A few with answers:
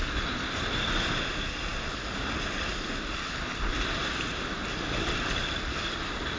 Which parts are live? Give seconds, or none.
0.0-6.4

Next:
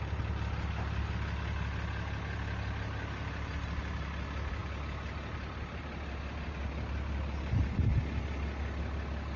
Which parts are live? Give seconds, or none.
0.0-9.4

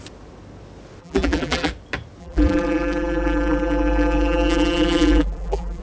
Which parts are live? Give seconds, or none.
0.0-1.0; 1.7-2.2